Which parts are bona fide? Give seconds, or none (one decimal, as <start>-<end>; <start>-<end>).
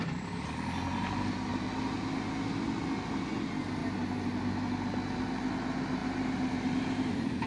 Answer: 0.0-3.8; 4.4-6.0